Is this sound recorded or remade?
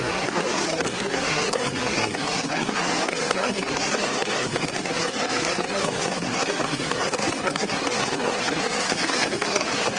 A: remade